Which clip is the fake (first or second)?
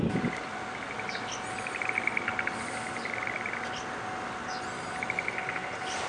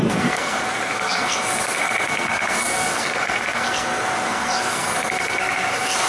second